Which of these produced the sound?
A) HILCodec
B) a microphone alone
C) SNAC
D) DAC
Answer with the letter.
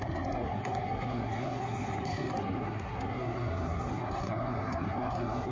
C